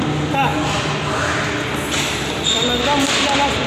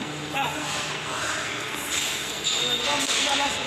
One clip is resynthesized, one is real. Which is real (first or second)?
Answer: first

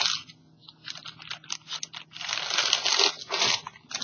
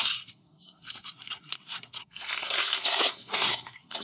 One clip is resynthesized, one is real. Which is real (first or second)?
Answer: first